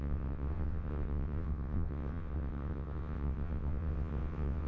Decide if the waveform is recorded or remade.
remade